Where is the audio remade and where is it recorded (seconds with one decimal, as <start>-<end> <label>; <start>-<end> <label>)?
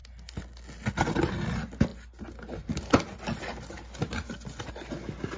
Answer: 0.0-5.4 recorded